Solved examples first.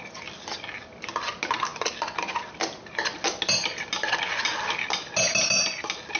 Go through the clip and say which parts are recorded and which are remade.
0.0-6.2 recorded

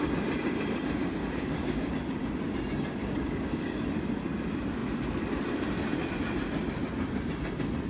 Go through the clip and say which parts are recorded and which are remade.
0.0-1.2 recorded; 1.2-1.9 remade; 1.9-3.0 recorded; 3.0-3.8 remade; 3.8-7.9 recorded

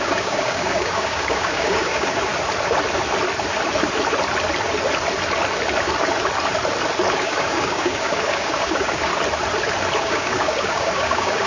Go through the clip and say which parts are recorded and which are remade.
0.0-2.3 remade; 2.3-7.2 recorded; 7.2-9.1 remade; 9.1-10.0 recorded; 10.0-11.5 remade

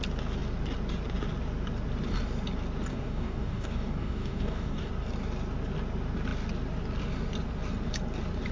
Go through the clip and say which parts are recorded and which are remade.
0.0-2.9 recorded; 2.9-4.9 remade; 4.9-8.5 recorded